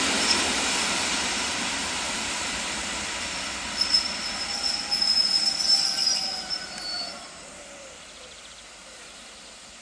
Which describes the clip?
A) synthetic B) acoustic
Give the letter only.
A